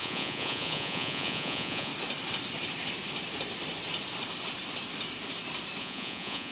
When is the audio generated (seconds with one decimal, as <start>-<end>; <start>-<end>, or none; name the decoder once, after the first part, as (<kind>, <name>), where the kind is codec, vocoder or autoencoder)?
0.0-1.9 (vocoder, Vocos); 5.8-6.5